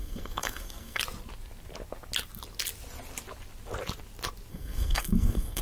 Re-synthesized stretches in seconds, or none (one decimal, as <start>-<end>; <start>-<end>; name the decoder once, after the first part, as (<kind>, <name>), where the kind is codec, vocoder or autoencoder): 0.0-1.0 (codec, SNAC); 4.5-5.6